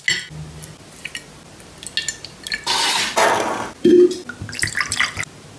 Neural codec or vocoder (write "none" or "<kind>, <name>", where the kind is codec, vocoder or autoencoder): none